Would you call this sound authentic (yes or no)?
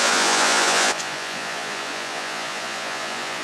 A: no